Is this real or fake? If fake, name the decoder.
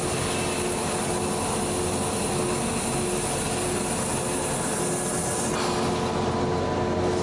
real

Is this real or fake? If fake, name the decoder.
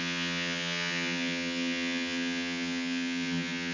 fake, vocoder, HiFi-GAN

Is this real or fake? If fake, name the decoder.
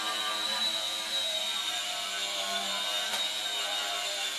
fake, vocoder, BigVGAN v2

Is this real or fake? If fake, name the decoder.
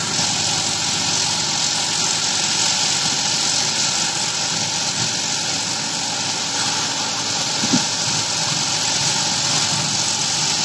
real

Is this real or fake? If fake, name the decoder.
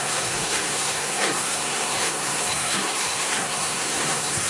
fake, codec, SNAC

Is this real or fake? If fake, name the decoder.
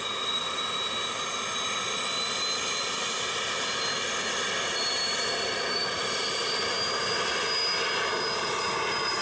real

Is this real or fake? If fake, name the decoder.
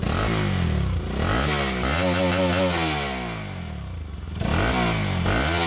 real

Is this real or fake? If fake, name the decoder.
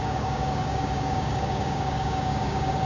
fake, codec, DAC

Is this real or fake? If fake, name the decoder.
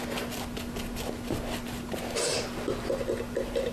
real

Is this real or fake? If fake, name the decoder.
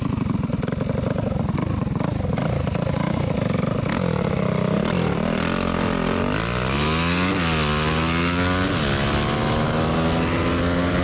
real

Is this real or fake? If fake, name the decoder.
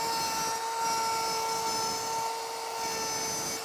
real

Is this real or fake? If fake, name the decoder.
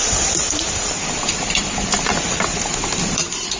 fake, vocoder, BigVGAN v2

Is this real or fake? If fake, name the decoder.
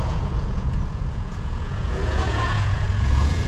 fake, vocoder, Vocos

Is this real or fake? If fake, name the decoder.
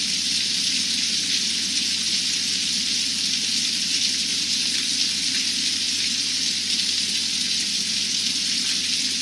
real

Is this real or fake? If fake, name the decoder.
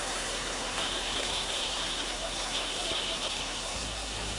fake, codec, SNAC